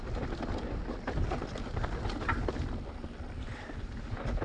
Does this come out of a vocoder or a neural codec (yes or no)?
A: no